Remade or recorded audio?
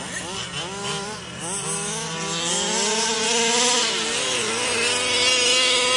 recorded